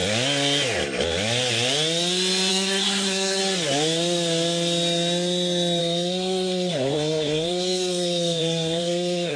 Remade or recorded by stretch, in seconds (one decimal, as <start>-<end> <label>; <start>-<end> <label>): 0.0-2.5 recorded; 2.5-3.4 remade; 3.4-5.8 recorded; 5.8-9.4 remade